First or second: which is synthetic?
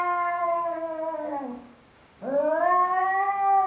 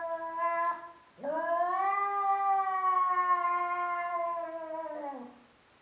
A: first